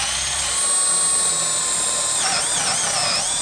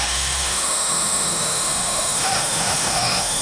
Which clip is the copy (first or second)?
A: second